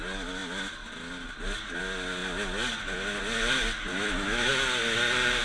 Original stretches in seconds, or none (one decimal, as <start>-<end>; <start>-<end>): 0.0-3.9; 4.5-5.4